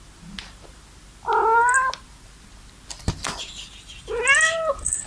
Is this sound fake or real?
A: real